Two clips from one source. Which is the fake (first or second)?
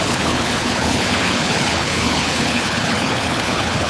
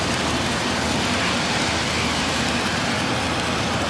first